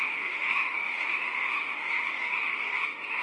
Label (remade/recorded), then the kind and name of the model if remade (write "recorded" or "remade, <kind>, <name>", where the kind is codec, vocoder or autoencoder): remade, autoencoder, DAC-VAE